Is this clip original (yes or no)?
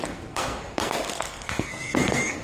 no